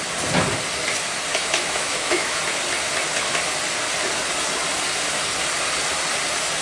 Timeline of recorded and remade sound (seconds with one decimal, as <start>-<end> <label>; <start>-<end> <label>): 0.0-1.3 recorded; 1.3-2.4 remade; 2.4-6.6 recorded